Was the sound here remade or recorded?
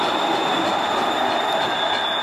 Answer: recorded